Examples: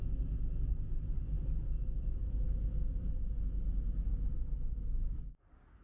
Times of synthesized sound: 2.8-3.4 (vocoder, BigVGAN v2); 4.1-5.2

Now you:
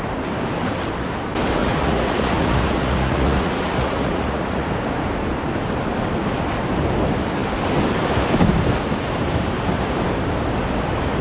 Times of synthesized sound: 1.6-4.7 (vocoder, Vocos)

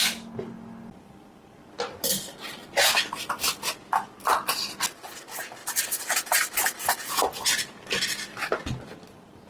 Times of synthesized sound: none

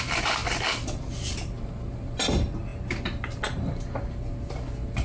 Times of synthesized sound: none

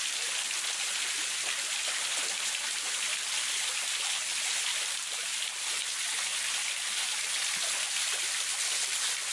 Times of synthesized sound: none

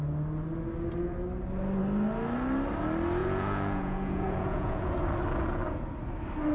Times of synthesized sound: 3.2-4.9 (vocoder, Vocos)

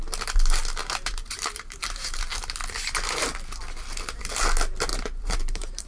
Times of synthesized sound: 0.8-2.2 (vocoder, BigVGAN v2); 4.9-5.9